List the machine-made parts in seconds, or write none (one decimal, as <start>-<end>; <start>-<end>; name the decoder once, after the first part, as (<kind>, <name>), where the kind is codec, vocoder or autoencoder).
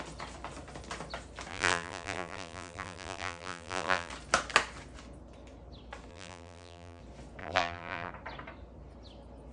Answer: 1.5-4.1 (vocoder, BigVGAN v2); 6.1-7.0; 7.4-8.1